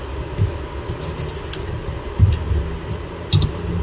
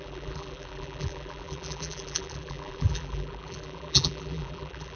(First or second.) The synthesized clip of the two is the second